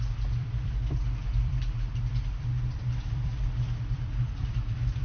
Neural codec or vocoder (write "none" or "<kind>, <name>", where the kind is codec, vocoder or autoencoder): vocoder, BigVGAN v2